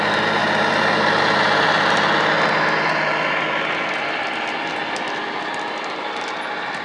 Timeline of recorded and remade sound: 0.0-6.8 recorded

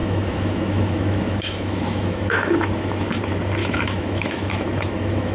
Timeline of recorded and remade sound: 0.0-3.2 remade; 3.2-3.6 recorded; 3.6-5.3 remade

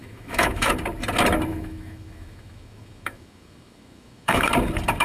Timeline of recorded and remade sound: 0.0-0.7 remade; 0.7-1.5 recorded; 1.5-4.5 remade; 4.5-5.0 recorded

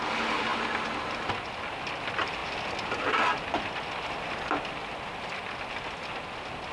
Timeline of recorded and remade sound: 0.0-6.7 recorded